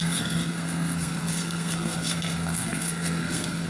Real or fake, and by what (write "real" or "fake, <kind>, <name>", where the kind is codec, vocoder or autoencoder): fake, codec, SNAC